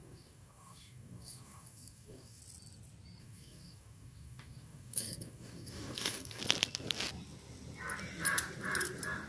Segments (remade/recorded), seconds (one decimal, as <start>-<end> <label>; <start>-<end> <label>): 0.0-2.4 remade; 2.4-3.2 recorded; 3.2-6.4 remade; 6.4-9.3 recorded